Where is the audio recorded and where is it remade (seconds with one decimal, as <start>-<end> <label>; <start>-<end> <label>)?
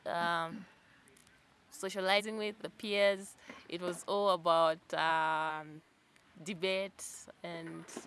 0.0-5.5 recorded; 5.5-6.2 remade; 6.2-8.1 recorded